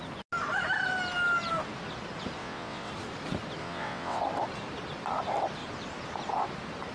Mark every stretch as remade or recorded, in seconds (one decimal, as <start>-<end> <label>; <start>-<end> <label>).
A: 0.0-2.4 recorded; 2.4-2.9 remade; 2.9-3.6 recorded; 3.6-4.2 remade; 4.2-6.9 recorded